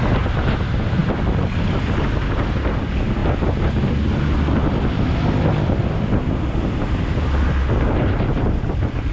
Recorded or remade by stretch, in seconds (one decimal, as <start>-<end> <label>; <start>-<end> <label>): 0.0-3.2 recorded; 3.2-3.9 remade; 3.9-4.6 recorded; 4.6-7.5 remade; 7.5-9.1 recorded